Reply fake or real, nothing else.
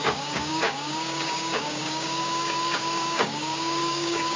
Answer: fake